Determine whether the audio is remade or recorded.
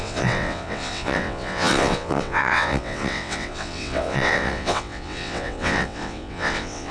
remade